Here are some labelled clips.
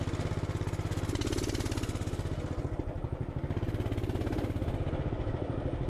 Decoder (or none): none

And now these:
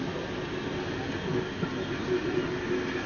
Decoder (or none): none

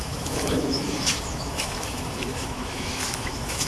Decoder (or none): autoencoder, DAC-VAE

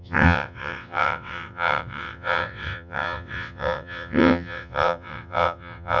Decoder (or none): vocoder, WaveNeXt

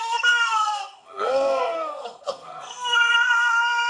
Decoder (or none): codec, SNAC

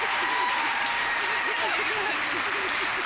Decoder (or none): vocoder, BigVGAN v2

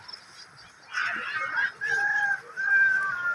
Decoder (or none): none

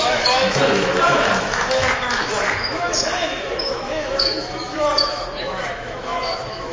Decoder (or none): autoencoder, DAC-VAE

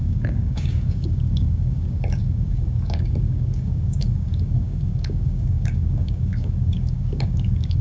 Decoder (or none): codec, DAC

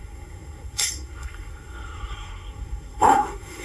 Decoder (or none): codec, SNAC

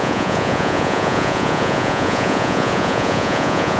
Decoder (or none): vocoder, Vocos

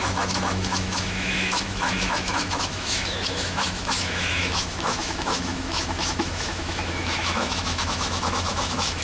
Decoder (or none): autoencoder, DAC-VAE